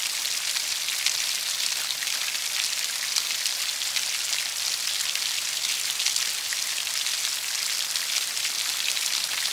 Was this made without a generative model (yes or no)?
yes